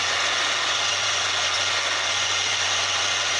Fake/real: fake